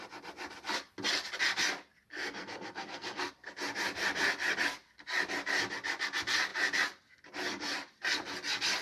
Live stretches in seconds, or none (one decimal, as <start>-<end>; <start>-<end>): 0.0-2.1; 3.3-8.8